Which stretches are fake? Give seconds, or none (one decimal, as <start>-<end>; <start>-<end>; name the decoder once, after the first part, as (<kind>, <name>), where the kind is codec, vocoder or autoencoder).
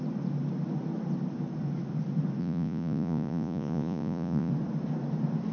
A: 2.4-4.5 (vocoder, Vocos)